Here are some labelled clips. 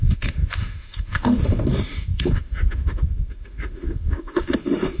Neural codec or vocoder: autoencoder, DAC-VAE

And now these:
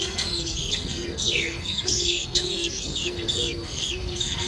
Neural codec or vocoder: codec, SNAC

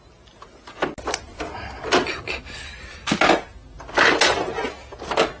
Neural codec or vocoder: none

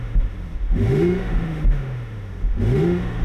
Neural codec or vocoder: autoencoder, DAC-VAE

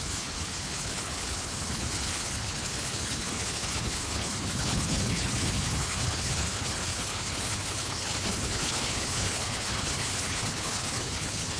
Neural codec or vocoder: codec, HILCodec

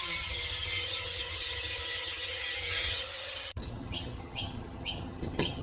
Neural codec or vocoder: vocoder, HiFi-GAN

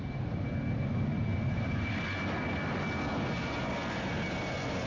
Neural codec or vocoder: none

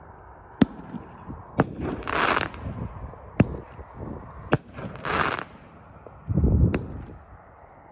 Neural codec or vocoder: none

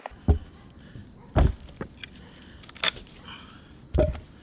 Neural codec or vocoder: none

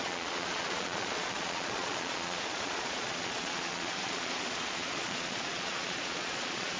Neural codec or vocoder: vocoder, Vocos